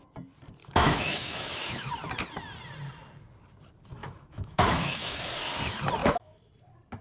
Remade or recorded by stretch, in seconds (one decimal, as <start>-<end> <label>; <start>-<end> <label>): 0.0-0.6 recorded; 0.6-1.9 remade; 1.9-4.0 recorded; 4.0-5.2 remade; 5.2-6.0 recorded; 6.0-6.5 remade; 6.5-7.0 recorded